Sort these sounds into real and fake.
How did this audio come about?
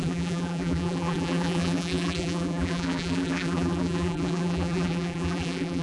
fake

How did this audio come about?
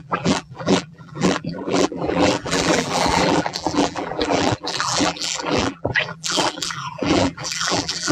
fake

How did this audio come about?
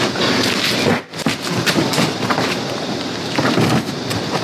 real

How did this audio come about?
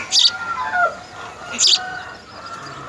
real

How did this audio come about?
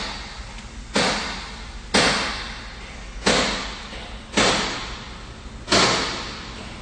real